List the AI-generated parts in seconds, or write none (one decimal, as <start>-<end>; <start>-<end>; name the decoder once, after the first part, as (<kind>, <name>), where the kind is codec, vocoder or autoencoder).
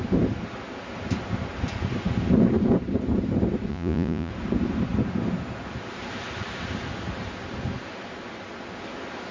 3.7-4.3 (vocoder, Vocos)